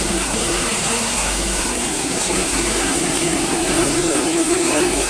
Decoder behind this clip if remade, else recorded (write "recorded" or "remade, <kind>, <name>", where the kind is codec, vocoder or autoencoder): remade, codec, SNAC